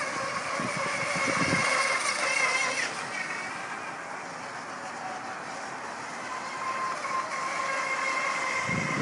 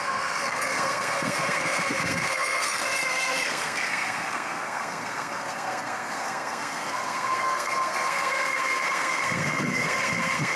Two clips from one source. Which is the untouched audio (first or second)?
first